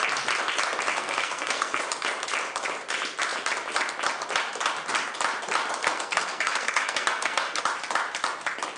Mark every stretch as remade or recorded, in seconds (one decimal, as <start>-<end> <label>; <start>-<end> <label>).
0.0-0.9 recorded; 0.9-1.8 remade; 1.8-5.8 recorded; 5.8-7.6 remade; 7.6-8.8 recorded